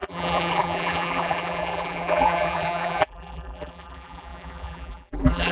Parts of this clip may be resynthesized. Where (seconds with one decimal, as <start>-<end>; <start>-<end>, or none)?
0.0-5.5